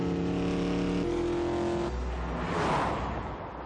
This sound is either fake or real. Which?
real